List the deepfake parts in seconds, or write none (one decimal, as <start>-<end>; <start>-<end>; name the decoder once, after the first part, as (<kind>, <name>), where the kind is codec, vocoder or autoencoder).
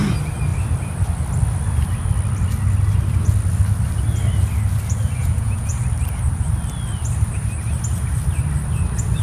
5.2-5.8 (vocoder, Vocos)